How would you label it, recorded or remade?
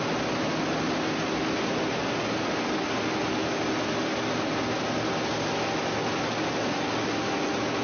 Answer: recorded